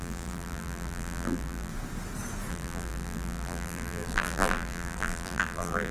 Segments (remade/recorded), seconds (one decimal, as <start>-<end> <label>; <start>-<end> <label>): 0.0-1.7 remade; 1.7-2.5 recorded; 2.5-5.9 remade